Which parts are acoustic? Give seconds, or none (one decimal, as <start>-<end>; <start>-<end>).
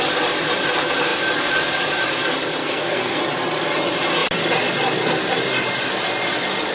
0.0-2.6; 3.2-6.7